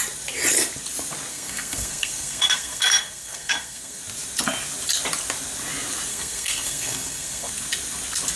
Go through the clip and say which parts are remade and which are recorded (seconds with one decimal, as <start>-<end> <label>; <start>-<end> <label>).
0.0-1.3 recorded; 1.3-4.0 remade; 4.0-6.1 recorded; 6.1-7.5 remade; 7.5-8.4 recorded